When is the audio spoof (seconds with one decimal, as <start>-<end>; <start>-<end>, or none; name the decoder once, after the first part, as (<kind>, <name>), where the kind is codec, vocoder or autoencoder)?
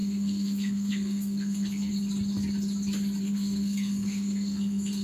0.0-1.9 (codec, SNAC); 3.2-5.0